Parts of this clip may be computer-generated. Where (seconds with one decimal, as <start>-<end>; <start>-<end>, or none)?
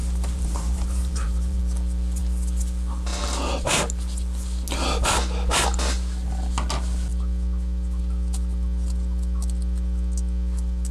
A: 0.0-1.6